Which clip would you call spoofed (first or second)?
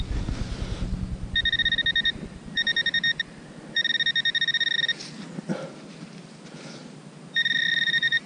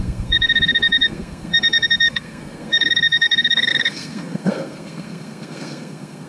second